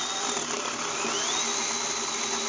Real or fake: fake